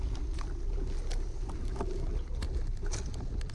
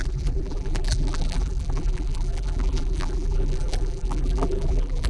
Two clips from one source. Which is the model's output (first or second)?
second